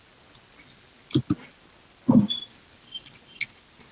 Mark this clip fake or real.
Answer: real